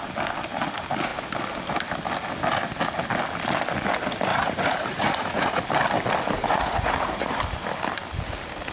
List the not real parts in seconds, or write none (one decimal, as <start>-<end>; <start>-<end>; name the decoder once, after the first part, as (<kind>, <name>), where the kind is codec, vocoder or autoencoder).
4.3-5.6 (vocoder, Vocos); 6.4-7.4